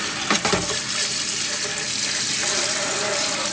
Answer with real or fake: real